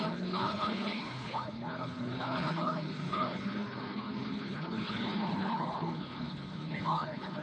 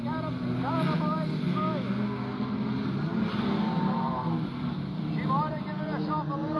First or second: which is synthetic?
first